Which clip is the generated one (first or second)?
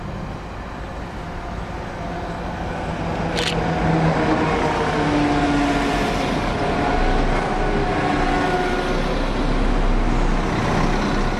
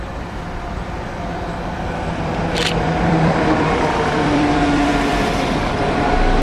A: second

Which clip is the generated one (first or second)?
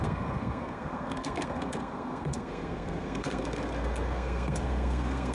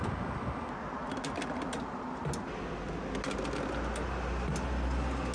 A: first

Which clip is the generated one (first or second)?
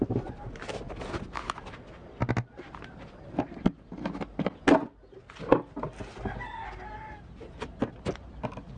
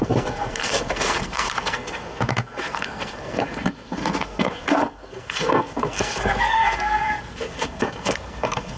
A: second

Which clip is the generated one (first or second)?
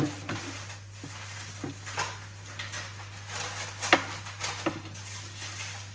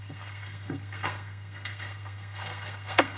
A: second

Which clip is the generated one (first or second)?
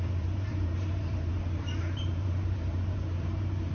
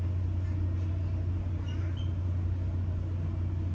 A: first